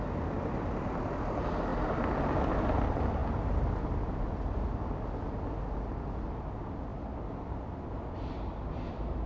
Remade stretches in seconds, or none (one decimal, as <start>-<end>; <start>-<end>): none